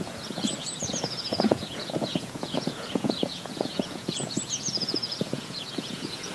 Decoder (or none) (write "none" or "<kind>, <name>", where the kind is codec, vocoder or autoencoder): vocoder, Vocos